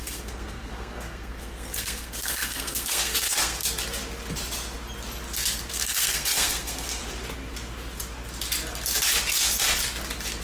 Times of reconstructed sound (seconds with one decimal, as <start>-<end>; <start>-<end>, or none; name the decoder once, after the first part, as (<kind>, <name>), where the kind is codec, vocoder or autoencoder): 0.0-3.6 (codec, SNAC); 5.7-7.0